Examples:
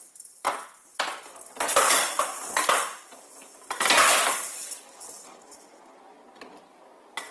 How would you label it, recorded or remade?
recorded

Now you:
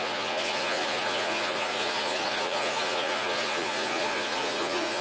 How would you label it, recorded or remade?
remade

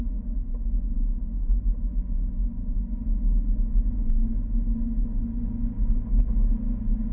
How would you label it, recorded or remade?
recorded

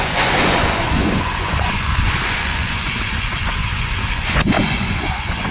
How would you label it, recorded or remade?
remade